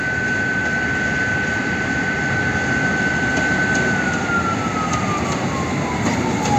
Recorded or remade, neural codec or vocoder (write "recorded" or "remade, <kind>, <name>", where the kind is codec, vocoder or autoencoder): recorded